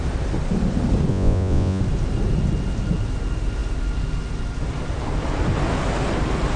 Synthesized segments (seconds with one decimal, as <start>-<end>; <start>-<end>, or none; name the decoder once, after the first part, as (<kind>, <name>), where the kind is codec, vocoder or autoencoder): 1.1-1.8 (vocoder, Vocos)